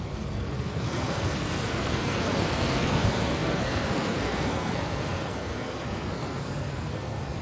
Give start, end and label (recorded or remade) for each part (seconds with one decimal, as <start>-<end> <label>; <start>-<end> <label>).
0.0-7.4 remade